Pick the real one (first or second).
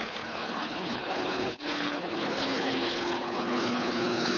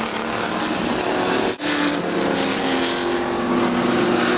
second